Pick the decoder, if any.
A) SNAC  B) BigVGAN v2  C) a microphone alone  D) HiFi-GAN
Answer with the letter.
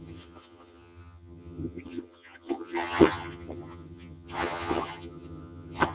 D